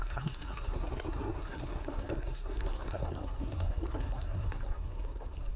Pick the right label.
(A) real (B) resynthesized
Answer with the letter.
B